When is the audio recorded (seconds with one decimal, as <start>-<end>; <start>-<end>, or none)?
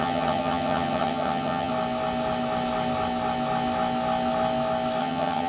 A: 1.7-5.0